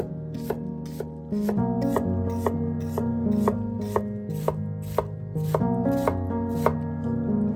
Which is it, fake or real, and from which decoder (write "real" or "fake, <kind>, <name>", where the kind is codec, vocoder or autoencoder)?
real